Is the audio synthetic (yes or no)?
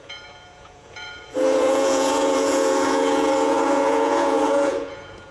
yes